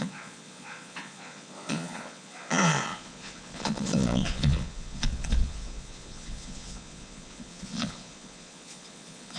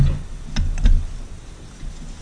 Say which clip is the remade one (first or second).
first